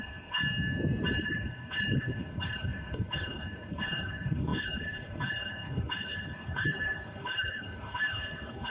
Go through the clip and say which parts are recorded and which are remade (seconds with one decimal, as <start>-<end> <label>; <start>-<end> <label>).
0.0-0.4 remade; 0.4-1.1 recorded; 1.1-8.7 remade